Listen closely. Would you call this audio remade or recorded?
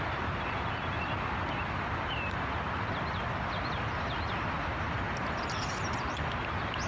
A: recorded